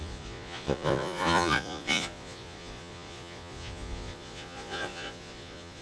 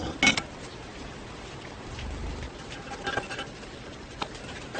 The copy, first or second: first